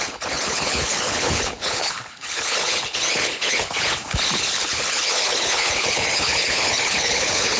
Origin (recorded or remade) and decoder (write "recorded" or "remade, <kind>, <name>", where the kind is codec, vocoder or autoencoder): remade, codec, HILCodec